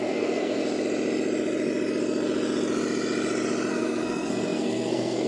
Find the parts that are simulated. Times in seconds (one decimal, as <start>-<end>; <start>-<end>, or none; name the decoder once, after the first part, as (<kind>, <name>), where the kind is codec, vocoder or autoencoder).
0.0-0.6 (codec, SNAC); 3.7-5.3